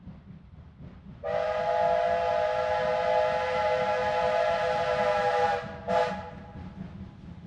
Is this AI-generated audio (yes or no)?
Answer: no